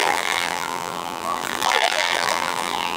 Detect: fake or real fake